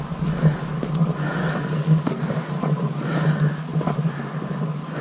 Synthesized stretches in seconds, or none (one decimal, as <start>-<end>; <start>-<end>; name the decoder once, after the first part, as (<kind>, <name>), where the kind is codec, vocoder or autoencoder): 1.4-2.4 (codec, SNAC)